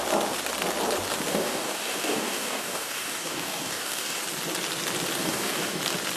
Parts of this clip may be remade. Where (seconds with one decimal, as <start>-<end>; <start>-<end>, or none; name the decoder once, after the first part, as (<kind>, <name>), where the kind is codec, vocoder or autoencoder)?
1.3-4.2 (codec, DAC); 5.2-5.8